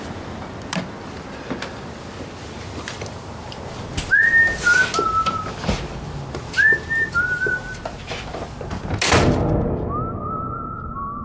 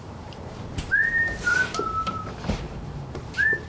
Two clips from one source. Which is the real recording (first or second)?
first